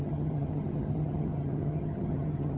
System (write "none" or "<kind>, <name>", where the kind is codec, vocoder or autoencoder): vocoder, HiFi-GAN